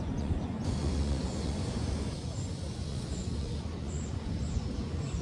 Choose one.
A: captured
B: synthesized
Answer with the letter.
B